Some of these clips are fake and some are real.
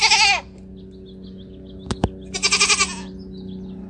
real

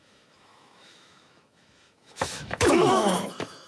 fake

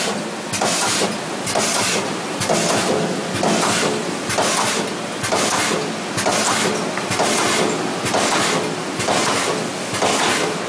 real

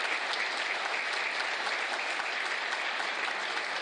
real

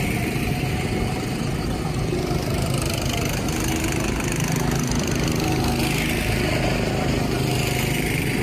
real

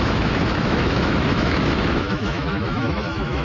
fake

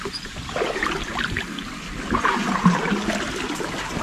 real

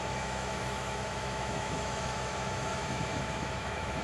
fake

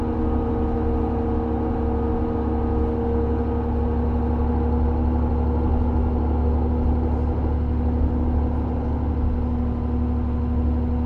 real